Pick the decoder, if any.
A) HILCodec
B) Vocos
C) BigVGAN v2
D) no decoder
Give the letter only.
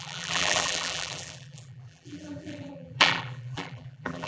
C